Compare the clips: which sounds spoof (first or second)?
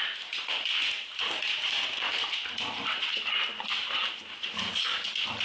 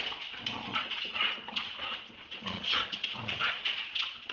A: second